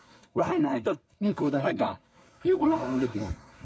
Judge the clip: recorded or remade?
remade